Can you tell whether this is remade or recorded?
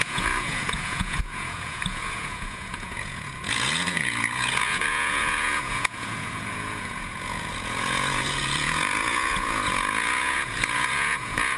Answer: remade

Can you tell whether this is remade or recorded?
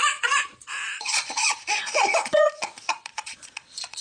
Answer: remade